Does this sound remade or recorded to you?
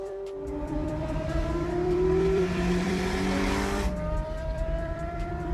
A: remade